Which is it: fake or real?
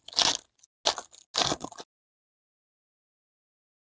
real